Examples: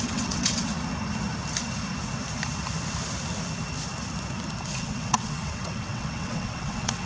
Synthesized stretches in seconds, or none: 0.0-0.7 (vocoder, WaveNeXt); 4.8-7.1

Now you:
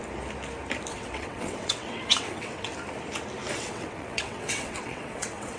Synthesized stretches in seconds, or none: 0.9-2.7 (vocoder, WaveNeXt); 3.6-5.6

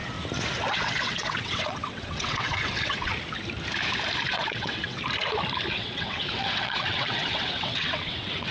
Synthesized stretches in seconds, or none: 0.7-3.1 (vocoder, WaveNeXt); 4.3-5.0; 5.7-8.5